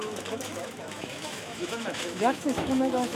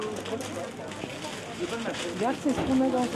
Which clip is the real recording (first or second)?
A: second